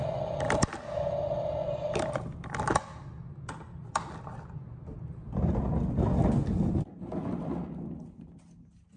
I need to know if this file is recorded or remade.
recorded